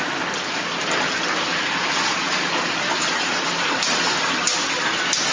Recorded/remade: recorded